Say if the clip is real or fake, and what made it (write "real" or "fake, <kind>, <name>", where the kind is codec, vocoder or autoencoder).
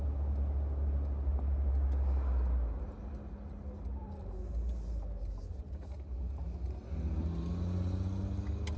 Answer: real